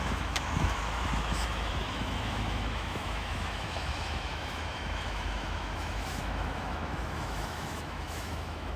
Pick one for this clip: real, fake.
fake